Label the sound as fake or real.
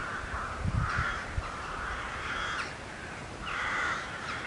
fake